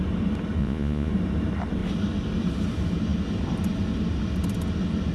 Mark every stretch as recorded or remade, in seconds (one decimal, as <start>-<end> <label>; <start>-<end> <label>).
0.0-0.6 recorded; 0.6-1.1 remade; 1.1-5.1 recorded